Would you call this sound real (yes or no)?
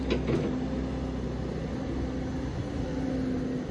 yes